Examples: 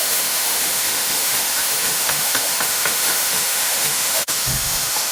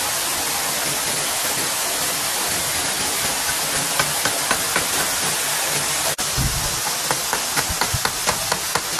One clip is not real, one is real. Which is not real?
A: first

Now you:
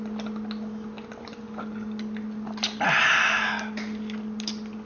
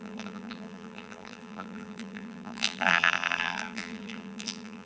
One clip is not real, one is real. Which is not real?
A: second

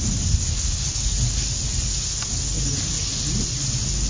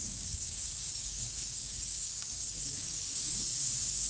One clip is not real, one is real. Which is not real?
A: second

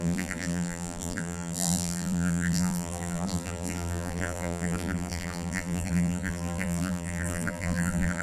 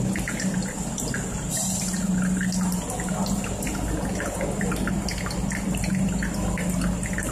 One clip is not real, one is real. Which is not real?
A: first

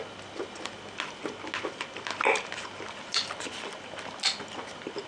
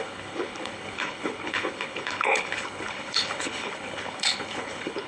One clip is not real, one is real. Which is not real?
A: second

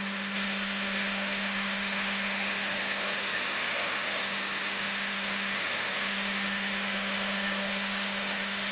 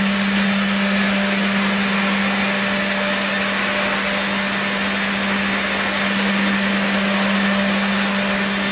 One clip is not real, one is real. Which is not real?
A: first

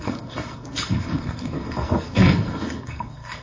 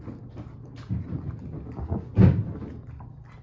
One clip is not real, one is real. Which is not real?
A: first